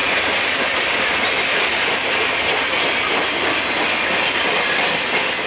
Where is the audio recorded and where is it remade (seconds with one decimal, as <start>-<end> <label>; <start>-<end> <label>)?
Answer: 0.0-5.5 recorded